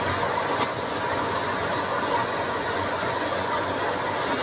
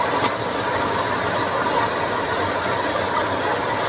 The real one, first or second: second